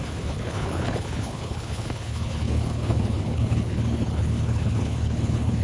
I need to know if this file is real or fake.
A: fake